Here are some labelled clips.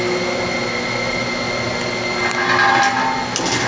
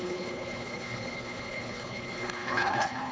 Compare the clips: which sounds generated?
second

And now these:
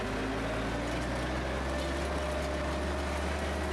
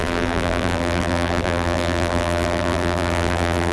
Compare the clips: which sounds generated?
second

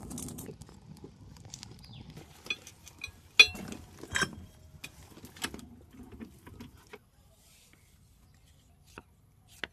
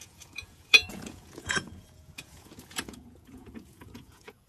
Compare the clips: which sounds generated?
second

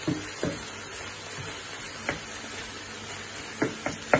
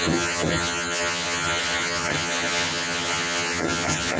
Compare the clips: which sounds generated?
second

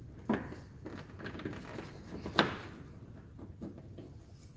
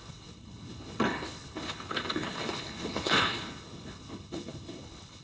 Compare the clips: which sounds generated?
second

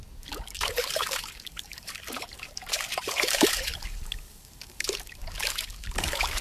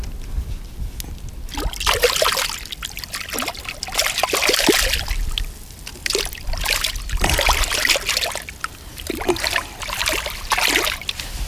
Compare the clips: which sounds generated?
first